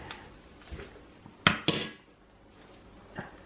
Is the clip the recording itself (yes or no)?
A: yes